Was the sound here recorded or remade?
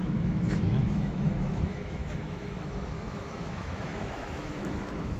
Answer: remade